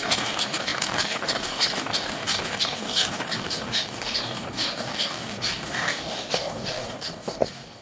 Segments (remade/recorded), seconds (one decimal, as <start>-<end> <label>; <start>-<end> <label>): 0.0-7.8 remade